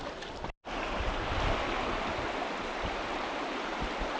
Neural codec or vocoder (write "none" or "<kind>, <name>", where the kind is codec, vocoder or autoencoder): none